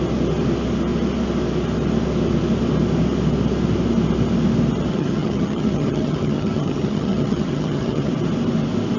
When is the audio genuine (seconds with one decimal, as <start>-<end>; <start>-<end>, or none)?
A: 0.0-4.9; 8.1-9.0